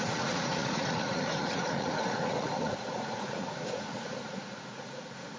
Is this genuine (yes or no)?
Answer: no